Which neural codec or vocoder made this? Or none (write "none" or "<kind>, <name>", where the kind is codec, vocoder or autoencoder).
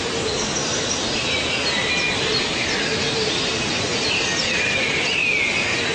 none